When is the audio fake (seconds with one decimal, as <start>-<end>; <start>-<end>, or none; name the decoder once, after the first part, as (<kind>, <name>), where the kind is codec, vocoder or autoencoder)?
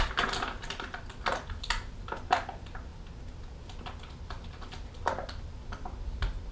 none